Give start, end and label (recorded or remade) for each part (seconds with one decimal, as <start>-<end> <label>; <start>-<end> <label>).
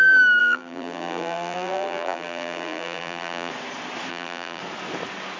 0.0-0.4 recorded; 0.4-3.5 remade; 3.5-4.1 recorded; 4.1-4.6 remade; 4.6-5.4 recorded